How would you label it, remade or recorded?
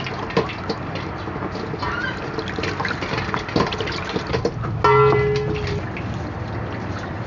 recorded